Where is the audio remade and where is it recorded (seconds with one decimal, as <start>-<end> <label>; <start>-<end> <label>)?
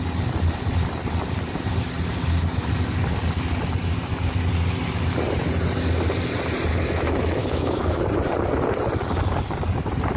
0.0-6.7 recorded; 6.7-8.0 remade; 8.0-10.2 recorded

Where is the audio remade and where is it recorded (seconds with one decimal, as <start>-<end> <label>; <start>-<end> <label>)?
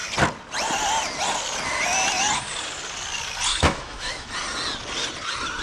0.0-3.5 recorded; 3.5-4.3 remade; 4.3-5.6 recorded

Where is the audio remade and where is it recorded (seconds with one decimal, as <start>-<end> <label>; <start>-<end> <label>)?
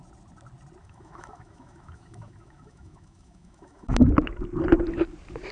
0.0-0.8 recorded; 0.8-4.1 remade; 4.1-5.5 recorded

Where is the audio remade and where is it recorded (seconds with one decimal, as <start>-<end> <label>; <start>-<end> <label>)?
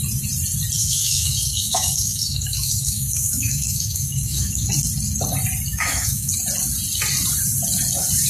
0.0-0.8 recorded; 0.8-4.7 remade; 4.7-5.7 recorded; 5.7-6.3 remade; 6.3-8.3 recorded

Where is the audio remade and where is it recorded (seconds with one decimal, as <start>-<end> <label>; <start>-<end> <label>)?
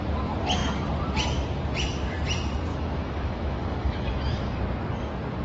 0.0-2.7 recorded; 2.7-4.6 remade; 4.6-5.4 recorded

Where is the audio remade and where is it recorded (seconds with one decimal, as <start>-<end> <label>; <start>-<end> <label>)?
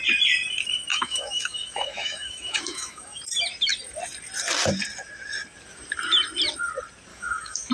0.0-0.9 recorded; 0.9-3.2 remade; 3.2-7.1 recorded; 7.1-7.7 remade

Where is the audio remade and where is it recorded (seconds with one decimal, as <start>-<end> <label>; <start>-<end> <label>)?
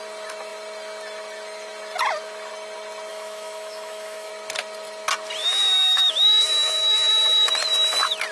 0.0-3.1 recorded; 3.1-4.3 remade; 4.3-5.4 recorded; 5.4-7.5 remade; 7.5-8.3 recorded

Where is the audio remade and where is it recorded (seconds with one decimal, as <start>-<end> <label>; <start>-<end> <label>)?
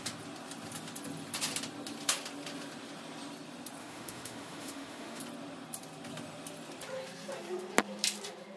0.0-3.8 recorded; 3.8-5.2 remade; 5.2-8.6 recorded